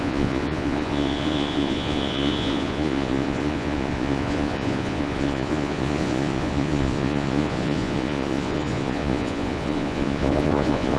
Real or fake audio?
fake